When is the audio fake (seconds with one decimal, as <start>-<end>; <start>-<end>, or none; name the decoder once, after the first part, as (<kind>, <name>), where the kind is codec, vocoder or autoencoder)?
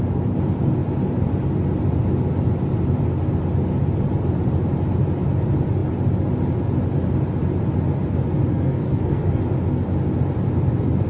8.5-9.4 (codec, SNAC)